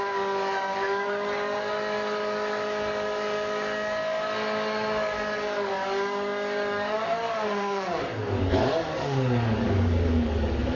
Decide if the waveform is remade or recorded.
remade